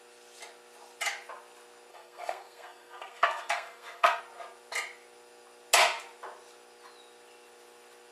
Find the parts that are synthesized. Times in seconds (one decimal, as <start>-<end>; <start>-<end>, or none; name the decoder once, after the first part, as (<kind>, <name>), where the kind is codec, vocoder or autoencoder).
1.9-4.2 (codec, SNAC)

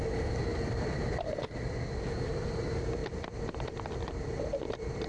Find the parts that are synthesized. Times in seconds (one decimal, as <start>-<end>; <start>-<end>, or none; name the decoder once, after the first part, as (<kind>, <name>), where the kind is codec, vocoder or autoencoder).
0.5-1.7 (vocoder, BigVGAN v2); 3.0-5.1

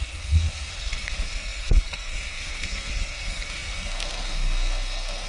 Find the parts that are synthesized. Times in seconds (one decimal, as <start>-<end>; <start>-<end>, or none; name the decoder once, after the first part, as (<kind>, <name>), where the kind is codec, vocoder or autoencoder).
0.0-5.3 (codec, SNAC)

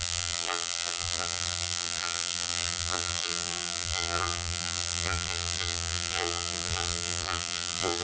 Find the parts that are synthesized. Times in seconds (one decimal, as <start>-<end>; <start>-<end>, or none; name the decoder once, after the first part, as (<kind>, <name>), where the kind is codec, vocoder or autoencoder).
0.0-8.0 (vocoder, BigVGAN v2)